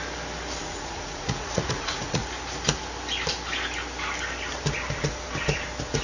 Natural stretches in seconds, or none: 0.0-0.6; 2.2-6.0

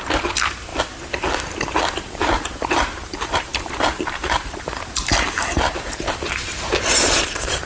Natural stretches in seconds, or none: 0.7-1.9

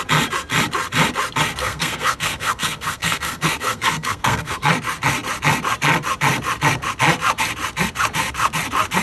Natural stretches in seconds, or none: 0.0-1.6; 4.7-9.0

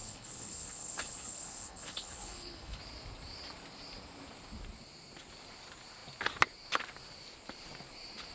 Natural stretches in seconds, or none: 2.8-8.3

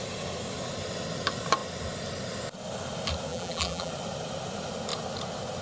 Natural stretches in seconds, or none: 0.0-3.3; 3.9-5.6

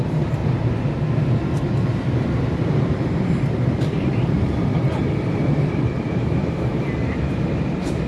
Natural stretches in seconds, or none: 0.4-2.6